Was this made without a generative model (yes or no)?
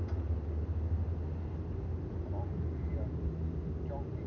yes